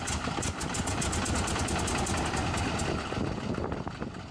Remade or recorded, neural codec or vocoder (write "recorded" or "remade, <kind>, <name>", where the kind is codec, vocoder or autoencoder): recorded